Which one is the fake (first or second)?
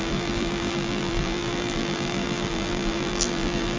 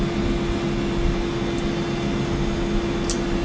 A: first